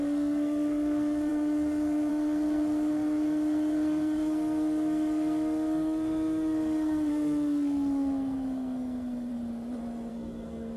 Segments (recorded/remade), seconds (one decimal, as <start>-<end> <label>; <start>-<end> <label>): 0.0-9.3 remade; 9.3-10.1 recorded; 10.1-10.8 remade